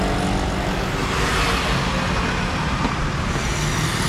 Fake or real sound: real